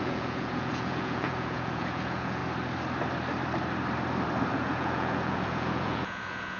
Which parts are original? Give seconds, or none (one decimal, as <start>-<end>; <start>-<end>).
2.4-4.5